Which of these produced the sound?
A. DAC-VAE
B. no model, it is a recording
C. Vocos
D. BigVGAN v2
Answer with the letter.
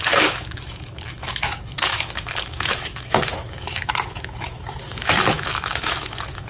A